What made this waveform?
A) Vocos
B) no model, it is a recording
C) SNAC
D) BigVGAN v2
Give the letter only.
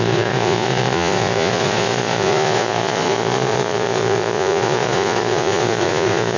A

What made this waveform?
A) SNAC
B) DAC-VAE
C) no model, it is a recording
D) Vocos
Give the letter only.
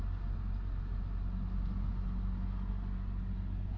C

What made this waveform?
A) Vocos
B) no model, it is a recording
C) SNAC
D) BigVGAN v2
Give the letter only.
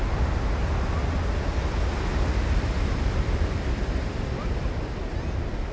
B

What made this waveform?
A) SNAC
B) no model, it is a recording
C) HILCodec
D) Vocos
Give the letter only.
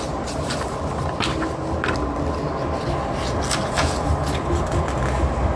B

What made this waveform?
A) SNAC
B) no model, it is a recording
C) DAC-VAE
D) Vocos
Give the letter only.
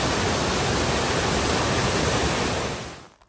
B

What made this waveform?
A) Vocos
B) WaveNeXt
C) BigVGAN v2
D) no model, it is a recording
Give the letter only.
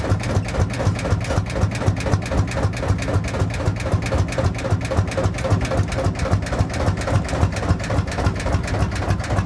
D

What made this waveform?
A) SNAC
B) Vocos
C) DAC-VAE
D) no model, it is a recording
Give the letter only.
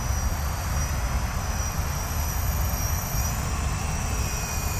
D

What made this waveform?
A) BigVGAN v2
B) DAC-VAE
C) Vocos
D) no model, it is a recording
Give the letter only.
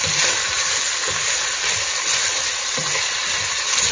D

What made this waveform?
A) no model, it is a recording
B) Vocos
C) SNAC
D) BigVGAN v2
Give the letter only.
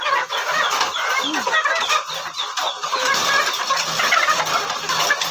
A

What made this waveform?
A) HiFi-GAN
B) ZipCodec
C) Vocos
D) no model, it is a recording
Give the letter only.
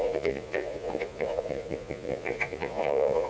C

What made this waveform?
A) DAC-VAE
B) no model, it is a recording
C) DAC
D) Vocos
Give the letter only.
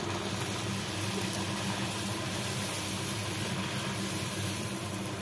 B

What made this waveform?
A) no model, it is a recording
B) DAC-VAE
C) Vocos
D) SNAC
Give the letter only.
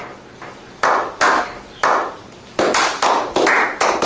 A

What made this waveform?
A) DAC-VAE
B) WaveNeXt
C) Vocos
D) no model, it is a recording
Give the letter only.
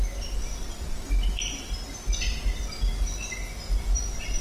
D